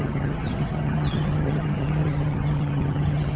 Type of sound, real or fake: fake